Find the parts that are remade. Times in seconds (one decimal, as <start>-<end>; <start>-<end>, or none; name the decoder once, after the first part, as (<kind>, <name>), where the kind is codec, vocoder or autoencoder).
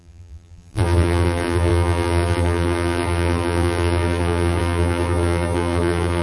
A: 0.0-6.2 (vocoder, BigVGAN v2)